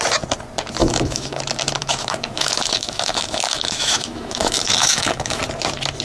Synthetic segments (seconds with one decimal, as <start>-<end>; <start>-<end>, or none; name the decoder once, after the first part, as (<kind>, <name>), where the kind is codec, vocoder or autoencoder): 0.8-1.4 (autoencoder, DAC-VAE); 1.8-5.4